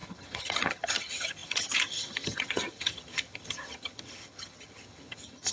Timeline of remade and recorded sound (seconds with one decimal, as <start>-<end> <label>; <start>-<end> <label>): 0.0-5.5 remade